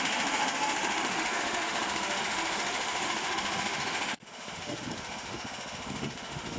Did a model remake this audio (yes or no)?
yes